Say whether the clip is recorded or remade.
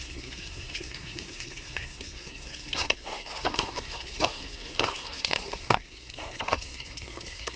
remade